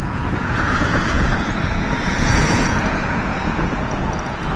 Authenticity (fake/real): fake